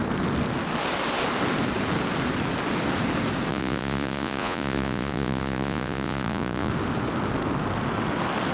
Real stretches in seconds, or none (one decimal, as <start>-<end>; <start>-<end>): 0.0-3.5; 6.7-8.5